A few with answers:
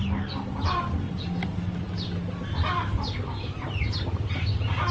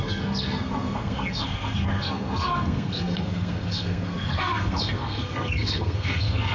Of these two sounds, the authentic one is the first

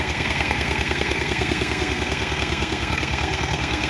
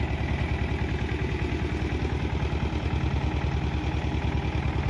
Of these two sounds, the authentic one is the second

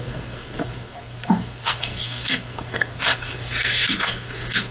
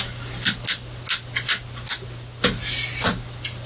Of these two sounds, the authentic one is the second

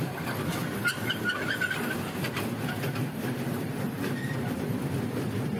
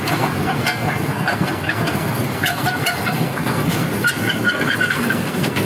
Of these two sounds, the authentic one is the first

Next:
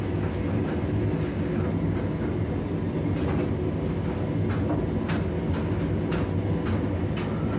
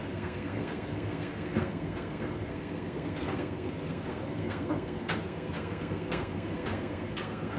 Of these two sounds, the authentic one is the first